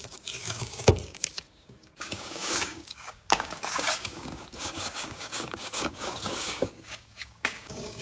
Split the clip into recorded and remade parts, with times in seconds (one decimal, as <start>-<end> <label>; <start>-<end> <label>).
0.0-8.0 remade